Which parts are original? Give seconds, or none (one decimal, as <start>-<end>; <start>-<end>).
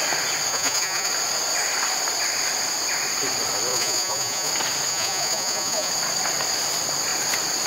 0.0-0.5; 1.1-3.7; 4.5-4.9; 5.9-7.7